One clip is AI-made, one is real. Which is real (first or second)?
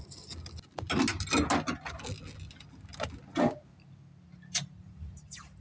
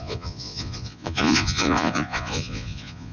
first